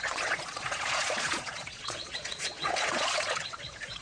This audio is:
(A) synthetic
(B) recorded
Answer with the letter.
A